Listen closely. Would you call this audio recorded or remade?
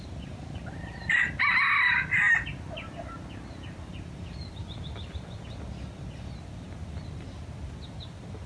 recorded